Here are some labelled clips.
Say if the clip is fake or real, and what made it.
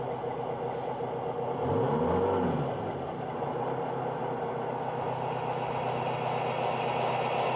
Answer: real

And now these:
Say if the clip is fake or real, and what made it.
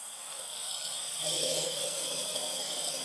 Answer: fake, codec, SNAC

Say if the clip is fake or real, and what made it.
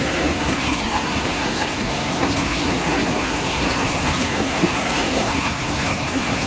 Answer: fake, codec, SNAC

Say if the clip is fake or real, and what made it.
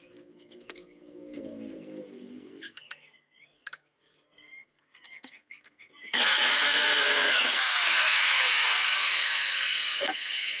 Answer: fake, codec, SNAC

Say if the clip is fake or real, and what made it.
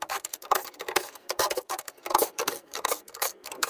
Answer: fake, codec, SNAC